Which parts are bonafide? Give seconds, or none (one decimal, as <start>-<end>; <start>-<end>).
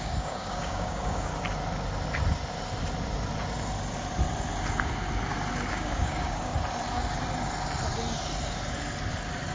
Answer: 1.3-5.7; 6.5-9.5